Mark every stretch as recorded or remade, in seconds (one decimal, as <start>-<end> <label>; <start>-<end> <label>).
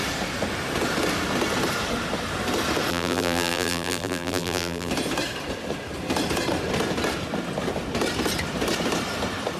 0.0-2.9 recorded; 2.9-4.9 remade; 4.9-9.6 recorded